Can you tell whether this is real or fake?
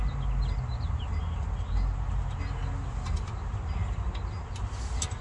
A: real